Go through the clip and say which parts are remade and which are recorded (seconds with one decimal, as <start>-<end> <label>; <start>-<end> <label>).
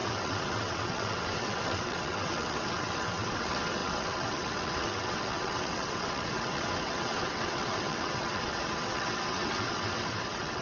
0.0-10.6 remade